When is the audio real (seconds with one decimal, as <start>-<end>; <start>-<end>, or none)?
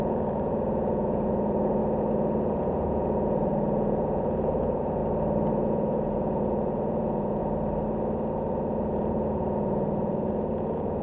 1.8-2.5; 5.0-5.5; 7.4-8.5